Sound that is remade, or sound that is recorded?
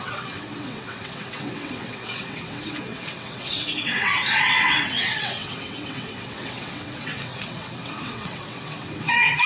remade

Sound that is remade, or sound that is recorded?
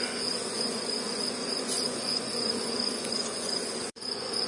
remade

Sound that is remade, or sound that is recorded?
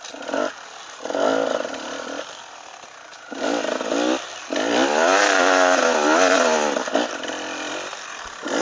recorded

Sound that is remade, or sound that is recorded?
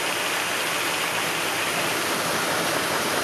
recorded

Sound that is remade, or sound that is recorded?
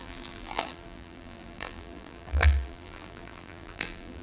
remade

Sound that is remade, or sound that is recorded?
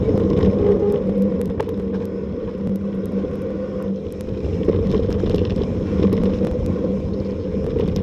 recorded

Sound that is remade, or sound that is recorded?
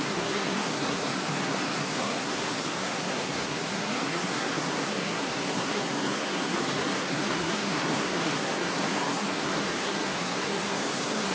remade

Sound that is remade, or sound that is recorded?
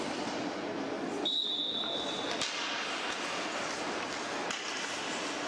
recorded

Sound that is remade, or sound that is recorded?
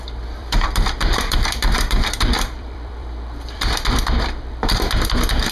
remade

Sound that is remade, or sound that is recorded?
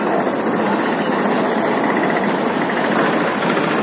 recorded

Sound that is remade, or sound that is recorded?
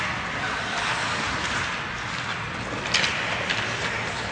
recorded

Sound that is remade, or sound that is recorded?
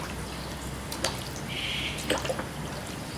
recorded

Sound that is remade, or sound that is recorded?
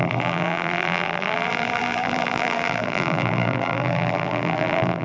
remade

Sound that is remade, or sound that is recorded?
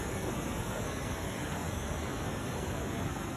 remade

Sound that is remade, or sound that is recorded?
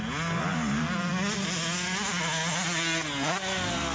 recorded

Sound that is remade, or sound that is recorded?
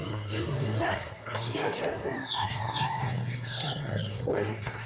remade